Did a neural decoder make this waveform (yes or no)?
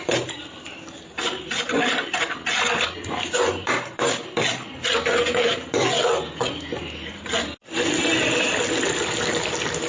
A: no